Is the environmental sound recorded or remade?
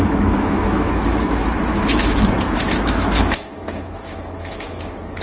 remade